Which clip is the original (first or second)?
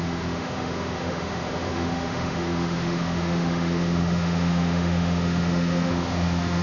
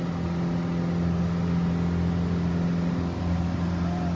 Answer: second